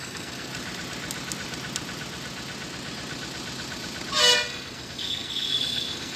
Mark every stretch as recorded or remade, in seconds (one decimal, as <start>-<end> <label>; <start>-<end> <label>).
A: 0.0-0.5 remade; 0.5-4.2 recorded; 4.2-6.2 remade